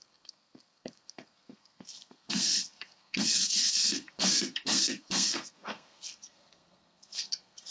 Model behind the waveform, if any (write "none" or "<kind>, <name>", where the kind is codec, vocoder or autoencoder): codec, SNAC